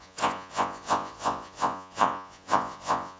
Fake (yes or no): yes